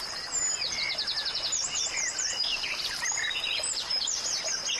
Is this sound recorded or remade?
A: recorded